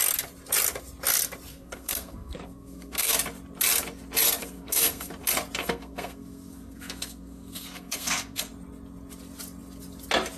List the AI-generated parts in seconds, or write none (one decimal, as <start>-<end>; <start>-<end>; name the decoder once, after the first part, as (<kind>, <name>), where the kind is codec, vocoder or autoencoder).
1.5-3.1 (codec, SNAC); 4.4-5.1; 5.6-8.5